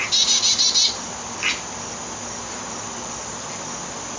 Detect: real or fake real